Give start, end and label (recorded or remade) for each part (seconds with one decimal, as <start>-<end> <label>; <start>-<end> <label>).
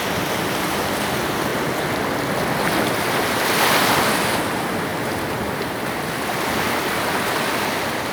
0.0-8.1 recorded